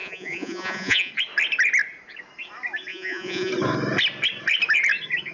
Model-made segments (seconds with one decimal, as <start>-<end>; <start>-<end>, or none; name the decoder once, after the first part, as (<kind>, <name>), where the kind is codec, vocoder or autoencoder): 0.0-1.1 (vocoder, Vocos); 2.9-3.5